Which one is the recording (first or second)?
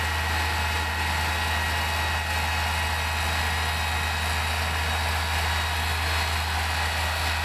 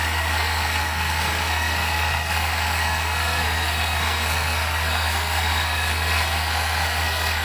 first